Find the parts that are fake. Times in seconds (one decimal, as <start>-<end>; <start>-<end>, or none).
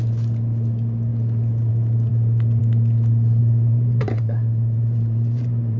3.4-5.8